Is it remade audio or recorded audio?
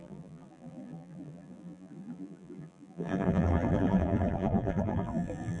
remade